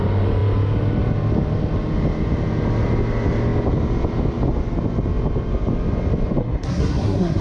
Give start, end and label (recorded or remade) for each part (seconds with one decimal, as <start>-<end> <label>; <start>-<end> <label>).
0.0-6.4 recorded; 6.4-7.4 remade